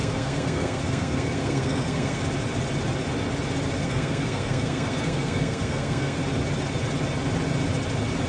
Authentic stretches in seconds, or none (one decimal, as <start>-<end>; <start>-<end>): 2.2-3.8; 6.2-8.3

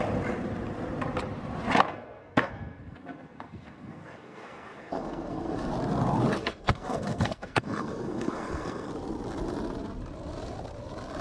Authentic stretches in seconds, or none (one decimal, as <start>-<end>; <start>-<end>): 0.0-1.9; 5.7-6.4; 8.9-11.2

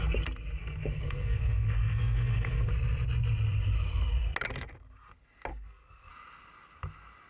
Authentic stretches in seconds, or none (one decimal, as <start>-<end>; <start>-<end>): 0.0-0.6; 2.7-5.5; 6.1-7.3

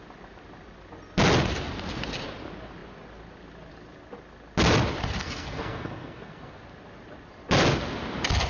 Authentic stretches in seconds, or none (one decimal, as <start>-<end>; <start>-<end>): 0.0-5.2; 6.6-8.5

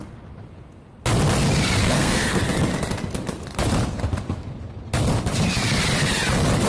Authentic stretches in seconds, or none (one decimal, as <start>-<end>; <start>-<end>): 0.0-1.8; 2.4-6.7